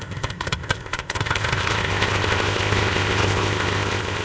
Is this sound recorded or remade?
remade